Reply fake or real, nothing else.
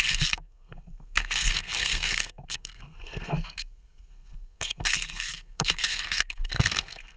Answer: fake